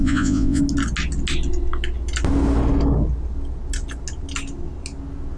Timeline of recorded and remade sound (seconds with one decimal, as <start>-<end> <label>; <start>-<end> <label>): 0.0-0.6 remade; 0.6-5.4 recorded

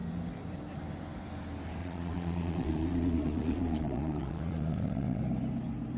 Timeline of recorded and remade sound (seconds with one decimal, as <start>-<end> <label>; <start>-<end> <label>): 0.0-1.8 recorded; 1.8-5.2 remade; 5.2-6.0 recorded

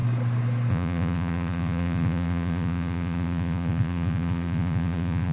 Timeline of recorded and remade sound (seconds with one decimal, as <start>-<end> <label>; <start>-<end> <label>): 0.0-0.7 recorded; 0.7-5.3 remade

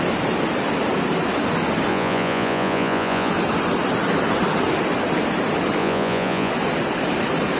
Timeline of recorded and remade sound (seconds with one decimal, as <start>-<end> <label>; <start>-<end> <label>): 0.0-1.9 recorded; 1.9-3.3 remade; 3.3-5.8 recorded; 5.8-6.5 remade; 6.5-7.6 recorded

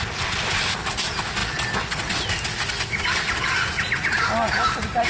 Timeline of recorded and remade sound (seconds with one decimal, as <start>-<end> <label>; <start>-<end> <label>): 0.0-5.1 recorded

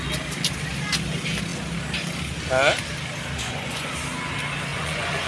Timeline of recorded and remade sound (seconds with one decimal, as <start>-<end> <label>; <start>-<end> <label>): 0.0-3.4 recorded; 3.4-3.9 remade; 3.9-4.7 recorded; 4.7-5.3 remade

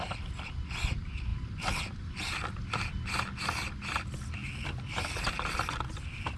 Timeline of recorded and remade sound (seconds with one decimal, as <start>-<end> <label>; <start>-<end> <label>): 0.0-6.4 recorded

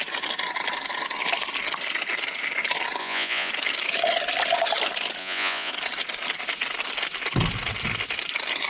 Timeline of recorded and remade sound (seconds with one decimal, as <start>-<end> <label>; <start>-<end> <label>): 0.0-3.0 recorded; 3.0-3.5 remade; 3.5-5.2 recorded; 5.2-5.7 remade; 5.7-8.7 recorded